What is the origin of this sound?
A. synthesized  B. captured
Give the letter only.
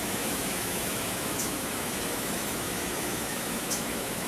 A